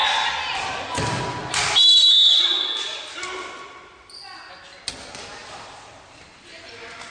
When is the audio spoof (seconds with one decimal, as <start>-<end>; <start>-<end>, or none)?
5.4-6.4